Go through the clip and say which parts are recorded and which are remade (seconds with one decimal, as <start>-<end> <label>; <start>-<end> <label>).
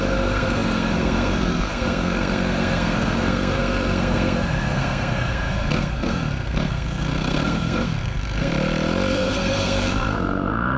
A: 0.0-8.5 remade; 8.5-9.1 recorded; 9.1-10.8 remade